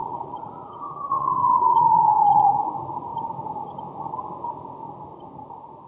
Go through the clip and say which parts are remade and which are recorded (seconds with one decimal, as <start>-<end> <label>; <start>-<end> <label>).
0.0-2.7 remade; 2.7-5.9 recorded